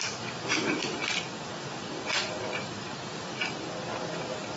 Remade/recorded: recorded